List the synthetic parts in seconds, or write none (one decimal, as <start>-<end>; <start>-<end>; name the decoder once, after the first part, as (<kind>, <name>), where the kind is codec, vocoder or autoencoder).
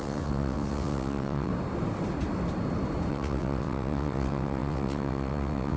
0.0-1.5 (vocoder, WaveNeXt); 3.1-5.8